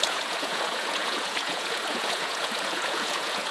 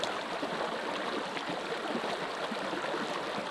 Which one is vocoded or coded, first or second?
first